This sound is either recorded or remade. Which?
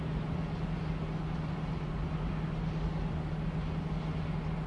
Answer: recorded